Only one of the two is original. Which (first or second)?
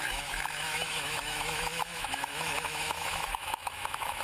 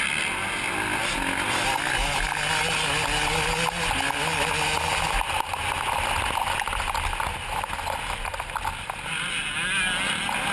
second